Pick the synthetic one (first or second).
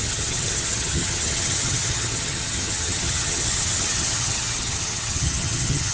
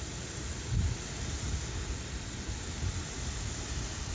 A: first